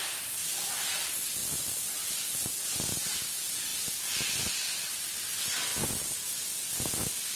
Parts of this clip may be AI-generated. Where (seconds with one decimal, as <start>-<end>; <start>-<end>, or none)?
1.4-2.1